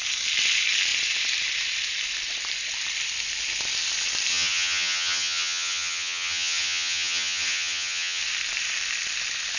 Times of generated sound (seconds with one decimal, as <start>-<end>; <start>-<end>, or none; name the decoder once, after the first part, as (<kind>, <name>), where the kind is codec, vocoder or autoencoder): 4.3-8.2 (vocoder, HiFi-GAN)